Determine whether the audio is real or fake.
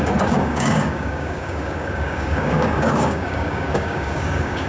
fake